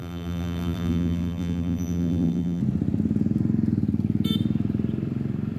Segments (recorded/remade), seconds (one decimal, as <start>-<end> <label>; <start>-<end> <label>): 0.0-2.6 remade; 2.6-5.6 recorded